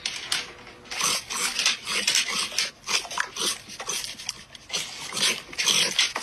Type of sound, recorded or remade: recorded